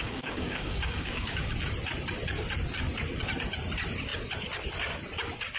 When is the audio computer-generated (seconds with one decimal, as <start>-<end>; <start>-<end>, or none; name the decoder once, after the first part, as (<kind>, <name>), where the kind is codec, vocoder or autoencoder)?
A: 0.0-1.5 (codec, DAC)